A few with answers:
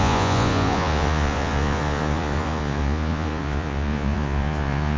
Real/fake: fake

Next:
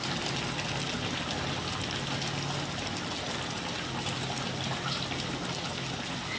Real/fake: real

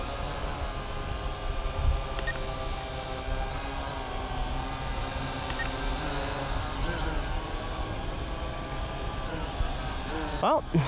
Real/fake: real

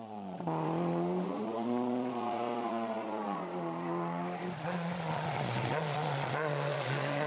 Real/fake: fake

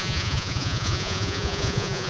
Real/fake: fake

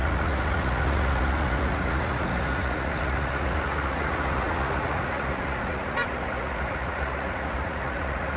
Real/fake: fake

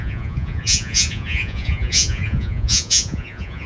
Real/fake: fake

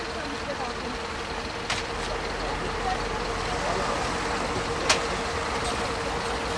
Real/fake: real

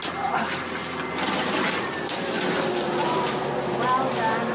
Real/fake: real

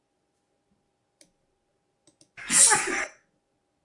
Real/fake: real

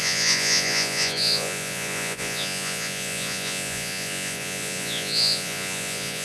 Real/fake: fake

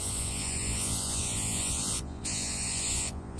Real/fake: fake